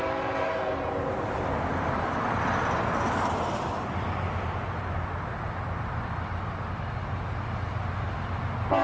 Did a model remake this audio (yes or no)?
no